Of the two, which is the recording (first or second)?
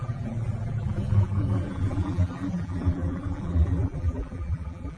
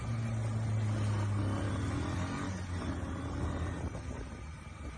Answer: second